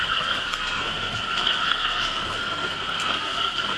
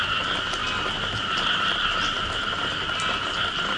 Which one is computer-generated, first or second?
first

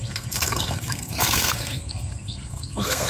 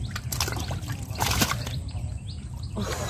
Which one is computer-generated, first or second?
first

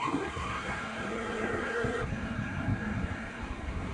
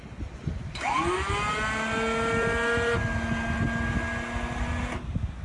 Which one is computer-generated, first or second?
first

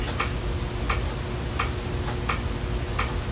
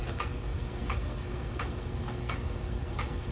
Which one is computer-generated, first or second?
second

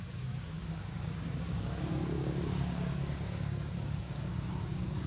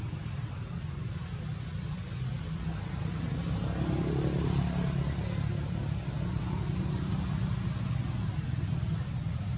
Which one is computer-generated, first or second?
first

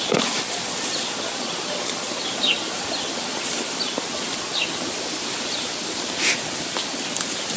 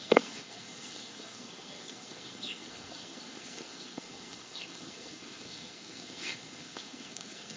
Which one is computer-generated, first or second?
second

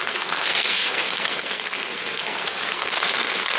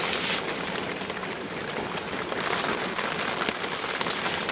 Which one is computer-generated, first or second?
first